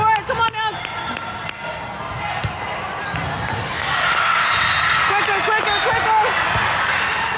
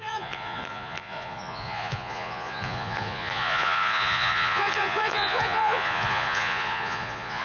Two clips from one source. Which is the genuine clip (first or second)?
first